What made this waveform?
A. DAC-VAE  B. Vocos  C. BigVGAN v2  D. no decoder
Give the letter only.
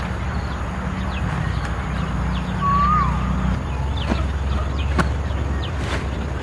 D